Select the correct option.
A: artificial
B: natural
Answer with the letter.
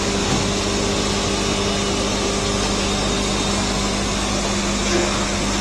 B